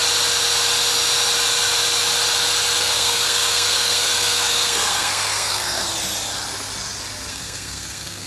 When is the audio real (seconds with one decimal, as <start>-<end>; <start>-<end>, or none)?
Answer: 0.0-2.8; 5.9-7.3